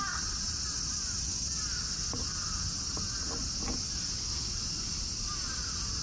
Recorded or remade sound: recorded